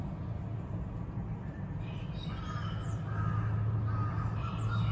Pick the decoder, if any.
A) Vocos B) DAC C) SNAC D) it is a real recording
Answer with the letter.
D